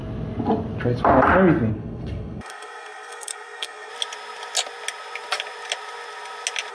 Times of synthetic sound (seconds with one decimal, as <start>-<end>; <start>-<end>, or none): 1.7-3.9